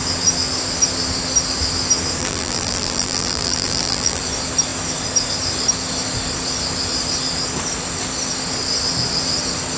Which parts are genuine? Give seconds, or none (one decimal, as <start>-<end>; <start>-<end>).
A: 0.0-2.2; 4.2-9.8